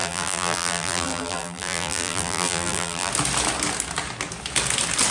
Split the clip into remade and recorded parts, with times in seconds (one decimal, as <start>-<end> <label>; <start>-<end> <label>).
0.0-3.1 remade; 3.1-5.1 recorded